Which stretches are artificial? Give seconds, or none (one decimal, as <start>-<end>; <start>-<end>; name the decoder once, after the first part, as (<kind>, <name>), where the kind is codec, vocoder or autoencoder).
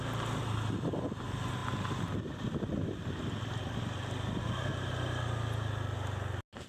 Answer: none